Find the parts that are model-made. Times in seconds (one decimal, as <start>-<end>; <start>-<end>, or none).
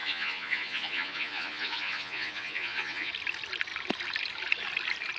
0.0-3.1